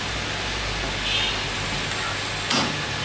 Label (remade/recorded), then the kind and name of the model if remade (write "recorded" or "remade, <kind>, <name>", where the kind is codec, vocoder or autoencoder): recorded